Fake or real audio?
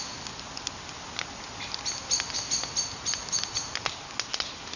real